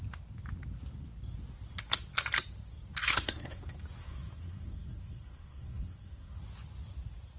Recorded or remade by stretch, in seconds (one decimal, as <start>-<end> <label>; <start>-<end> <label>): 0.0-3.0 recorded; 3.0-3.6 remade; 3.6-4.0 recorded; 4.0-6.4 remade; 6.4-7.4 recorded